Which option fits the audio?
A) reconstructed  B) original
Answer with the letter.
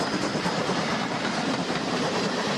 A